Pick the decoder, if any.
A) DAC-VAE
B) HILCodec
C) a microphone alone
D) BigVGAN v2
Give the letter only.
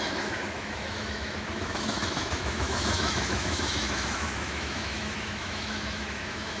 A